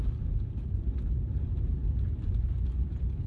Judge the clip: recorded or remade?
recorded